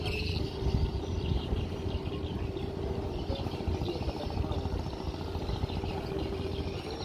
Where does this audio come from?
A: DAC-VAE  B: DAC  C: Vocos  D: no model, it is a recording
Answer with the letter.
D